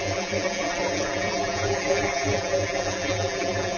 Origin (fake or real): fake